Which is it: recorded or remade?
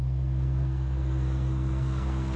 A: remade